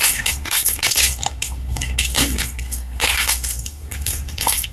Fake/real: fake